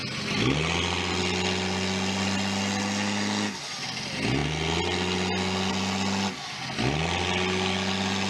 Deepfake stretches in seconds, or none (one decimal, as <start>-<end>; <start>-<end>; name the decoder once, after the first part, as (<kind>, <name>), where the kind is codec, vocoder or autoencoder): none